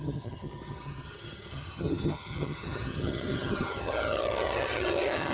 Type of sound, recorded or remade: remade